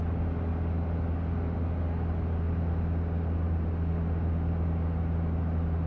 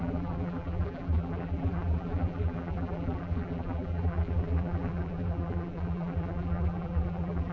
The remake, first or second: second